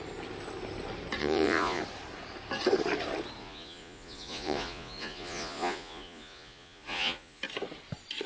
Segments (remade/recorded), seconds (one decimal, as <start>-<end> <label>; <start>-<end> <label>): 0.0-1.2 recorded; 1.2-1.8 remade; 1.8-3.4 recorded; 3.4-7.4 remade; 7.4-8.3 recorded